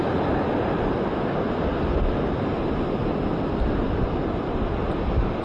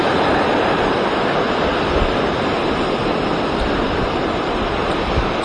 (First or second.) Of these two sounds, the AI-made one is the second